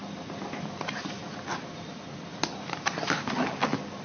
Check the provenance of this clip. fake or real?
real